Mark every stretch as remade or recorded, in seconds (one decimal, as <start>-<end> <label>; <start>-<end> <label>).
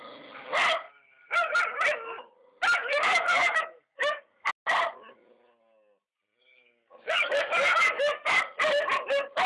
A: 0.0-2.8 recorded; 2.8-4.5 remade; 4.5-6.4 recorded; 6.4-8.4 remade; 8.4-9.5 recorded